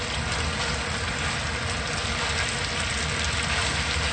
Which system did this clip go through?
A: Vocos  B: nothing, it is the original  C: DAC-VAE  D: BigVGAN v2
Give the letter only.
B